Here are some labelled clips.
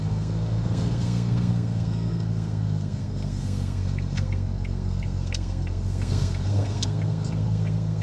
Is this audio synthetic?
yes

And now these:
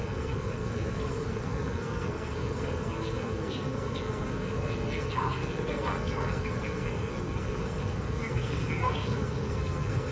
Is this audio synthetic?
yes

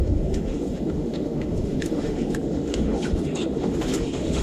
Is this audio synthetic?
yes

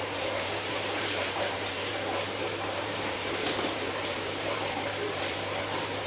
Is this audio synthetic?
yes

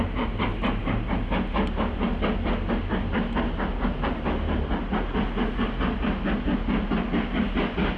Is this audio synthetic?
no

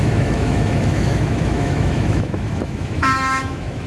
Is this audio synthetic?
yes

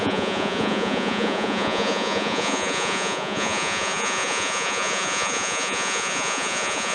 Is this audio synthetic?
yes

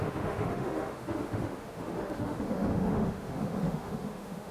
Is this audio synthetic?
yes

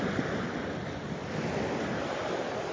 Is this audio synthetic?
no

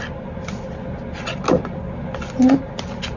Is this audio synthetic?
no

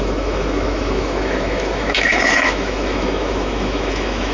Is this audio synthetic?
yes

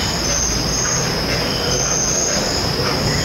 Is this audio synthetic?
no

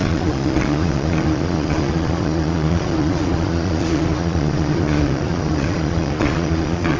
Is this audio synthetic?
yes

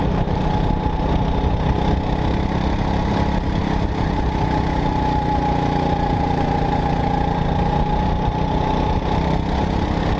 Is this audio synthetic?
no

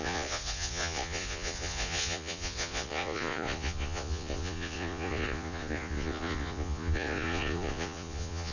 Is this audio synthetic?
yes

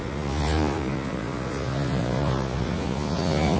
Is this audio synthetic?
yes